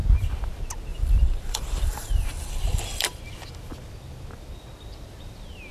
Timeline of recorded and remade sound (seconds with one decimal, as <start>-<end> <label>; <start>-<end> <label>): 0.0-0.9 recorded; 0.9-3.2 remade; 3.2-5.7 recorded